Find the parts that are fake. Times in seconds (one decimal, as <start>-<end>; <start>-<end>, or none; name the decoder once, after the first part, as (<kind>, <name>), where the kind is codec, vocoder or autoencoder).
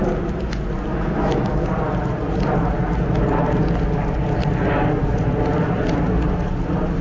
0.9-1.7 (autoencoder, DAC-VAE)